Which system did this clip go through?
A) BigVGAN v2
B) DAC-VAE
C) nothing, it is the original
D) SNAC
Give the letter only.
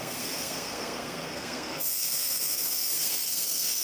D